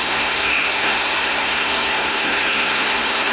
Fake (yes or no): yes